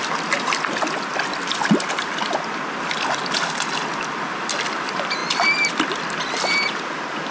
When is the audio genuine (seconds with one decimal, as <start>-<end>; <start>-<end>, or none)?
0.0-7.3